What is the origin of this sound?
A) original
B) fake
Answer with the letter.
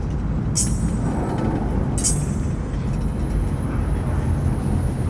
A